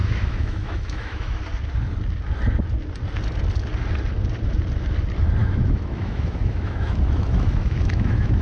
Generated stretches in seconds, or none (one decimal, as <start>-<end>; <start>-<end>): 0.0-1.4; 5.4-8.4